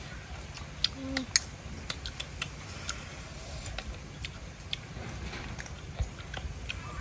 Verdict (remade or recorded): recorded